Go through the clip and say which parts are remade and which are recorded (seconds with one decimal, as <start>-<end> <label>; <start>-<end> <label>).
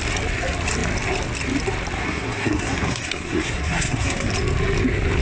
0.0-2.0 recorded; 2.0-4.3 remade; 4.3-5.2 recorded